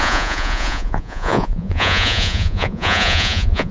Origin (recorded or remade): remade